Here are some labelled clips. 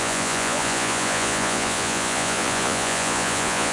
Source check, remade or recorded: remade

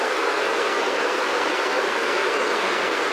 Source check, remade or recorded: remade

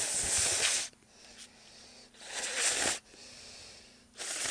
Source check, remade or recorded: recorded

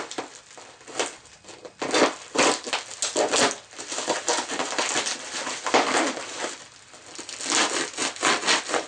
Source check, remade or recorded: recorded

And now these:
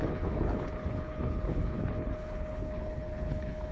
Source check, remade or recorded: remade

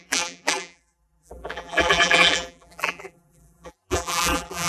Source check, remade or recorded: remade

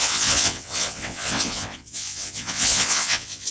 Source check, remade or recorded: remade